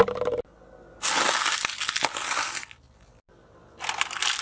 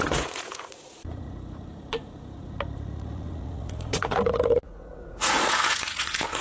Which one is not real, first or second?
second